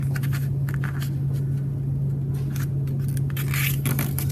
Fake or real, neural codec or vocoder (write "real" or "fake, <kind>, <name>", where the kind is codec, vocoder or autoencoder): real